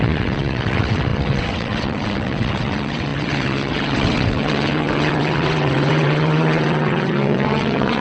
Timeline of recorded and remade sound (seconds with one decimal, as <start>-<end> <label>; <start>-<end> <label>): 0.0-8.0 remade